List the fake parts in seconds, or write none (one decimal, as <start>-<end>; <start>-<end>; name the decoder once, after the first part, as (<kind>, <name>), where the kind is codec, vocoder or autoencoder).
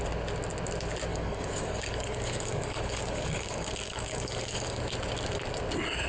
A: 1.1-4.8 (codec, DAC)